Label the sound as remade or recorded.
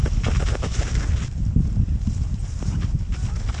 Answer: recorded